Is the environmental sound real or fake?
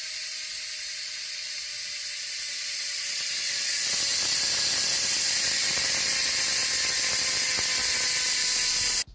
real